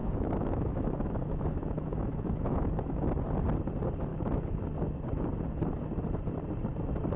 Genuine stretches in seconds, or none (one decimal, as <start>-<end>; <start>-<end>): 3.1-4.1; 4.7-7.2